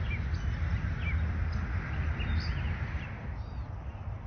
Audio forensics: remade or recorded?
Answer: recorded